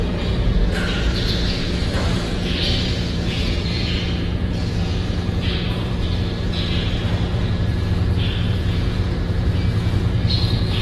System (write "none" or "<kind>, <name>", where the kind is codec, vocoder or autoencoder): vocoder, Vocos